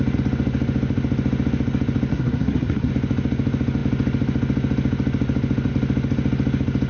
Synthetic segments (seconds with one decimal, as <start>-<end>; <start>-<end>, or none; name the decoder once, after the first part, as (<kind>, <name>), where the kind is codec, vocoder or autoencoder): 2.1-2.9 (codec, SNAC)